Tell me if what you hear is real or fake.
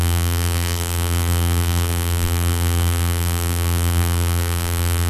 fake